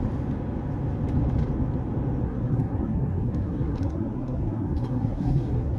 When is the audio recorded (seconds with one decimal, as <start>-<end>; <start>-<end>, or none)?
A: 0.0-2.2